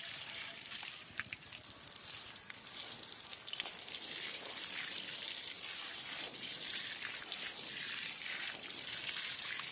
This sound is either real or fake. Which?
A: fake